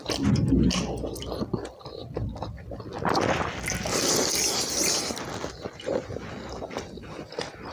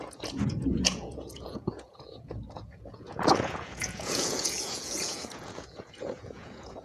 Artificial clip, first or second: second